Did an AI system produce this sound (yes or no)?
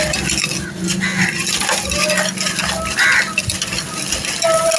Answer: no